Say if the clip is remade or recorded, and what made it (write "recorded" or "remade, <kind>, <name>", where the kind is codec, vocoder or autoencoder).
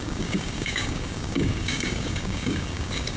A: remade, codec, DAC